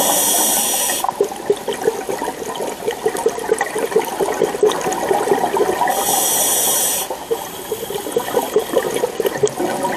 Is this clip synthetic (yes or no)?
no